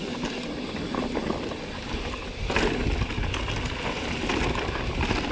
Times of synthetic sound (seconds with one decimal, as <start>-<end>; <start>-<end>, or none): none